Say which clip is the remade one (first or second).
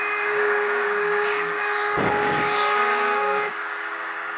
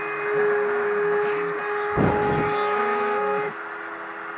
first